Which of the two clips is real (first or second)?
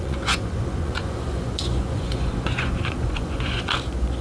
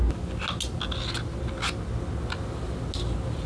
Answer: second